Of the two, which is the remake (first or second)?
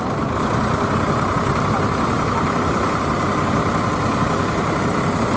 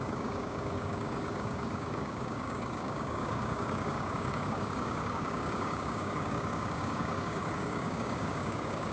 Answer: second